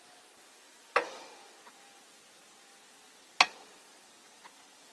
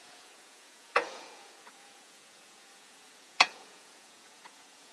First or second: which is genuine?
first